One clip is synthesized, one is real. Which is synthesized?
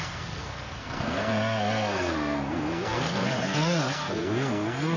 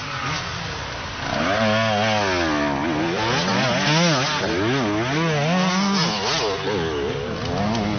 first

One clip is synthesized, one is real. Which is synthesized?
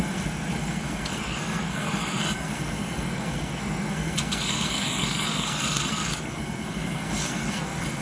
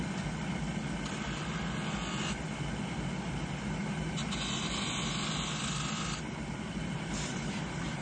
first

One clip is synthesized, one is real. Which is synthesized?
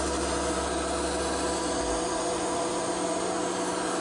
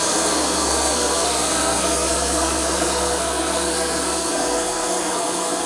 second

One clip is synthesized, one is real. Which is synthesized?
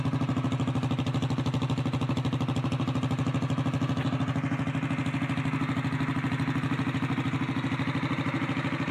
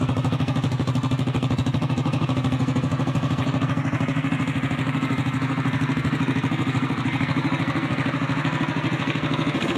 second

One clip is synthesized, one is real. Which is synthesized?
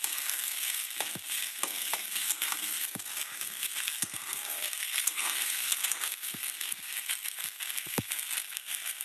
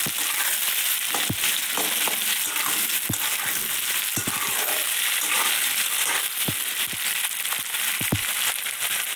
first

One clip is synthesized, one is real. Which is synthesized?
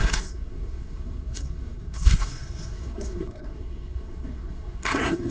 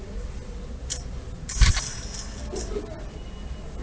first